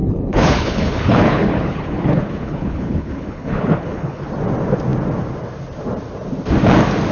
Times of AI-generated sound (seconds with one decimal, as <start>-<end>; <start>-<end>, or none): 0.0-4.3